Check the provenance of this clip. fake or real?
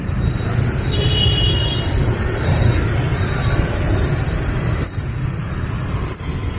fake